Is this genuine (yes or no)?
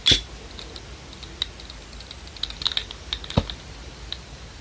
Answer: yes